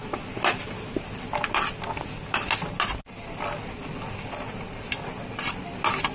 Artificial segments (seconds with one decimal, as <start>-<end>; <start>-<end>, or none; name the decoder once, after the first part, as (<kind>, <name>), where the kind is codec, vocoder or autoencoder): none